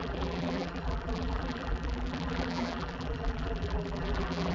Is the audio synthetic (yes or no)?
yes